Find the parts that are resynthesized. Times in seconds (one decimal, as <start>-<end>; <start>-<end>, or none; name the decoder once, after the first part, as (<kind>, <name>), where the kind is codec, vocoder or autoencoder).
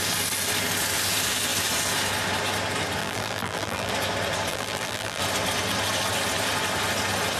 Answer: 3.0-3.9 (vocoder, BigVGAN v2); 4.5-5.2